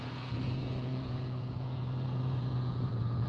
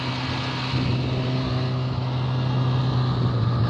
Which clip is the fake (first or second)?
first